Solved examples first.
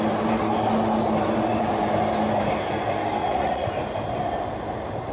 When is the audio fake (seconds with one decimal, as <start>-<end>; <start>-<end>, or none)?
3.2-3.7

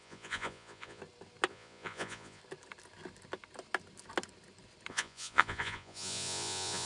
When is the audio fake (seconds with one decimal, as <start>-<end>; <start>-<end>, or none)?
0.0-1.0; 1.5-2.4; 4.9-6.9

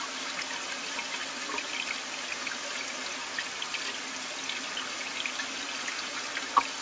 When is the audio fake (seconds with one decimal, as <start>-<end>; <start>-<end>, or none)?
none

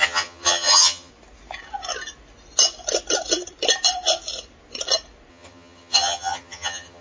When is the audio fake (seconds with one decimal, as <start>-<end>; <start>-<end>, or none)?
0.0-1.1; 5.3-7.0

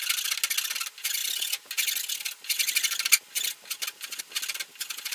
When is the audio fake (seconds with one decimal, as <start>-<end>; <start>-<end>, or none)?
none

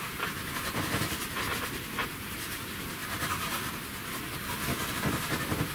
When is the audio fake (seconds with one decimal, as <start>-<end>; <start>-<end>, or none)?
0.0-3.0; 4.9-5.7

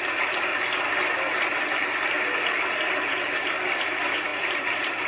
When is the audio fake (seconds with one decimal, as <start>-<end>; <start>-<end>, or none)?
0.0-0.5; 2.9-5.1